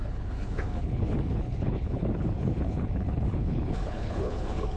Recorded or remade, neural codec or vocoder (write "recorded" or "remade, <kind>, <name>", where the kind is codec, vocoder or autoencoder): remade, codec, HILCodec